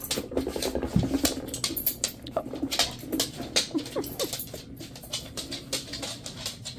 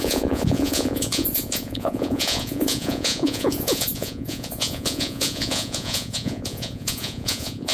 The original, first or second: first